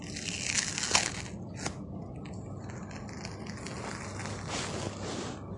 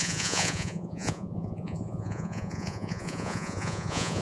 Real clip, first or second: first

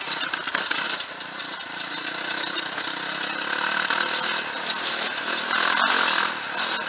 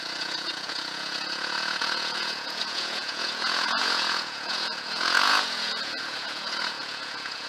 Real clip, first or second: first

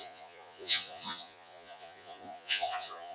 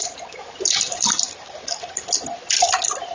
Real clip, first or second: second